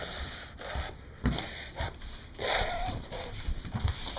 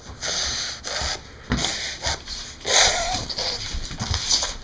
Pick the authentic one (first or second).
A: second